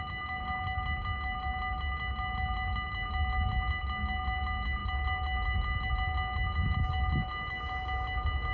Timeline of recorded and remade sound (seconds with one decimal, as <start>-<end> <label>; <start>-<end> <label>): 0.0-8.5 recorded